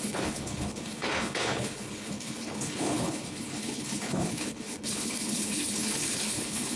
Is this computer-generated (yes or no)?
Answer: yes